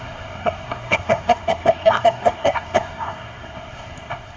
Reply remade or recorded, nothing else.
remade